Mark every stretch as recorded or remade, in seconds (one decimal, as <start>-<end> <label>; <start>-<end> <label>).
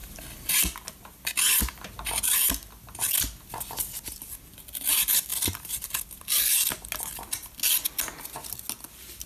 0.0-5.3 recorded; 5.3-5.9 remade; 5.9-9.3 recorded